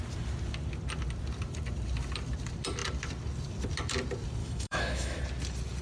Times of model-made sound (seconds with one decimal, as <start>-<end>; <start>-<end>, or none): 4.4-5.2